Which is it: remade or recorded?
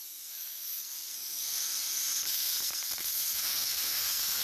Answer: remade